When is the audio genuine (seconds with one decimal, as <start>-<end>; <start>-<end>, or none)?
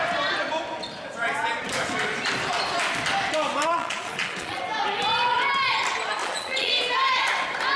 0.0-3.7; 4.6-6.2; 6.7-7.8